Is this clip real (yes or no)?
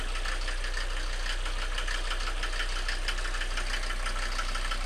yes